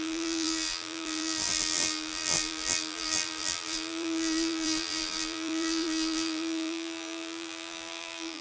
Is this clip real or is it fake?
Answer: fake